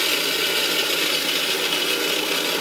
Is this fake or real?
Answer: real